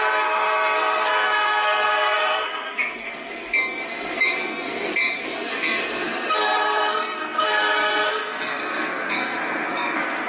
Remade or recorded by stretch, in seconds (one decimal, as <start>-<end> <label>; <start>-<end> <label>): 0.0-10.3 remade